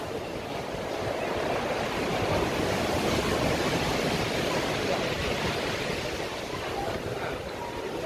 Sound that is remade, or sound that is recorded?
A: recorded